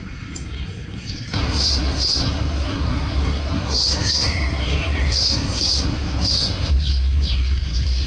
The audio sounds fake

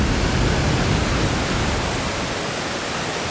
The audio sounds real